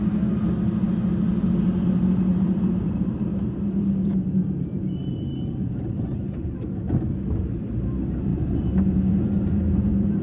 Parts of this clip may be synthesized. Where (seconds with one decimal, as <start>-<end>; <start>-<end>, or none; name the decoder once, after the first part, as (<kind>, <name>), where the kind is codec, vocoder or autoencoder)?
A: 2.3-6.5 (vocoder, BigVGAN v2); 8.3-10.2